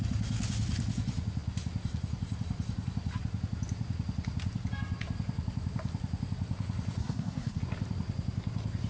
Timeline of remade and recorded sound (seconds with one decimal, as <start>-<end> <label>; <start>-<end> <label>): 0.0-7.0 recorded; 7.0-7.6 remade; 7.6-8.9 recorded